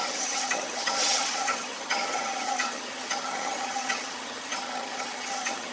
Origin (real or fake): fake